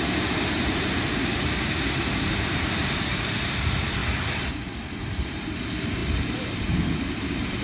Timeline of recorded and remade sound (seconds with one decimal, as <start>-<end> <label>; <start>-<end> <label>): 0.0-4.0 remade; 4.0-5.0 recorded; 5.0-7.6 remade